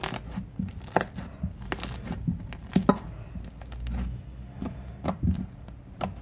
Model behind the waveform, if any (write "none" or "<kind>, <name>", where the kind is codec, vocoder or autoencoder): none